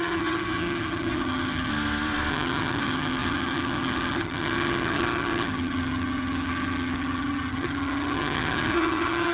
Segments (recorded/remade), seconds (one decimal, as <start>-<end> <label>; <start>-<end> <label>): 0.0-1.7 remade; 1.7-2.3 recorded; 2.3-9.3 remade